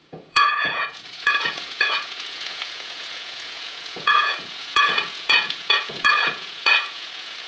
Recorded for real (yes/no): no